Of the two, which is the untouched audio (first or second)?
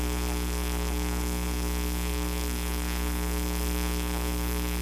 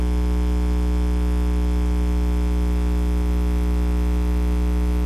second